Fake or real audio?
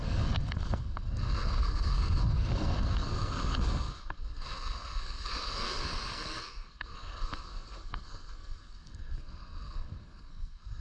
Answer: fake